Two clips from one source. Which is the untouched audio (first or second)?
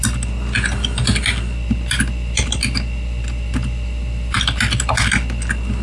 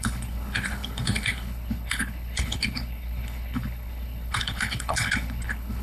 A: first